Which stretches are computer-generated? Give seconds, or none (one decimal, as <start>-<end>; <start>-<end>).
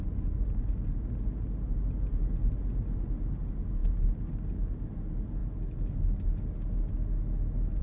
none